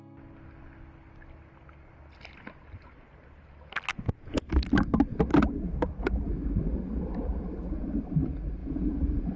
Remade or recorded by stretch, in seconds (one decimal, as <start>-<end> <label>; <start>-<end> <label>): 0.0-3.9 recorded; 3.9-4.5 remade; 4.5-8.6 recorded; 8.6-9.4 remade